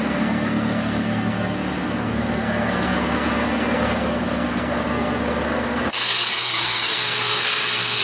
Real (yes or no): no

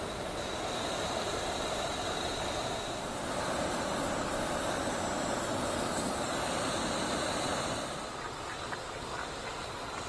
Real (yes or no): yes